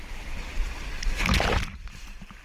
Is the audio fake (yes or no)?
no